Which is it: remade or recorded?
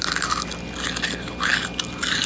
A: recorded